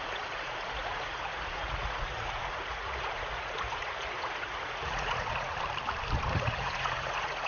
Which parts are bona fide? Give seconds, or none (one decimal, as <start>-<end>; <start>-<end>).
5.5-6.3